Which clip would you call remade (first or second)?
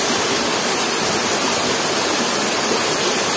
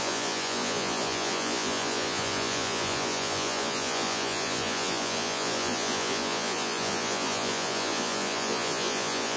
second